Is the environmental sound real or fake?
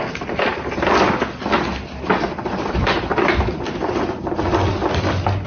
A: real